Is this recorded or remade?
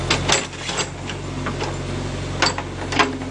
recorded